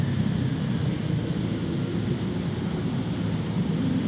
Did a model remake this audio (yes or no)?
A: no